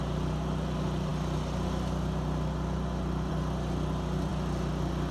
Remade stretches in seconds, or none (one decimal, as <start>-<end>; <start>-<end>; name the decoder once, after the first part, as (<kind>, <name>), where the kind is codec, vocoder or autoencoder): none